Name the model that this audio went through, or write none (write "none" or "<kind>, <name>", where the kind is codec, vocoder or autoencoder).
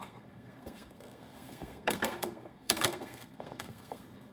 codec, SNAC